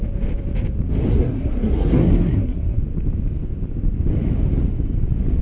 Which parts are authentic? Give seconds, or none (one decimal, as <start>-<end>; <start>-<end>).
0.0-1.1; 2.8-5.4